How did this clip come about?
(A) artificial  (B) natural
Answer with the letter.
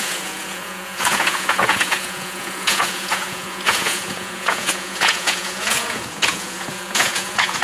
A